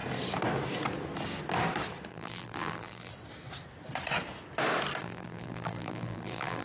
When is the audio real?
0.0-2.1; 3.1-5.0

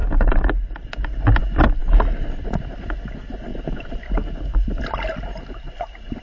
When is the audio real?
0.9-1.8; 2.4-3.5; 4.8-6.2

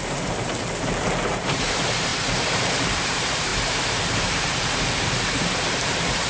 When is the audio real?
none

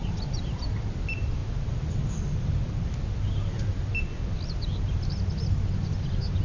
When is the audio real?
0.6-6.4